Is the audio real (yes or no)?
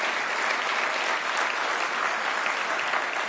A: yes